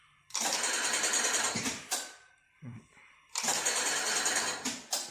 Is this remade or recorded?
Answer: remade